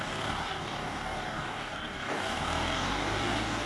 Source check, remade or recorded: remade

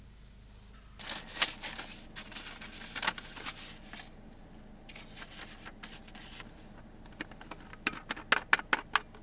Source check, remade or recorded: recorded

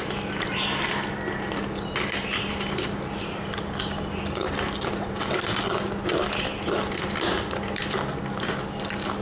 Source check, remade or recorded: recorded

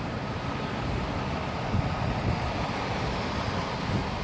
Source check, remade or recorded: recorded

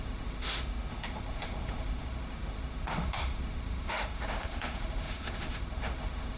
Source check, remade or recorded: remade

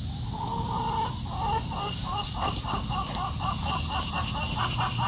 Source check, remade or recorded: recorded